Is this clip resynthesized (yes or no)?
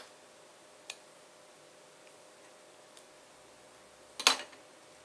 no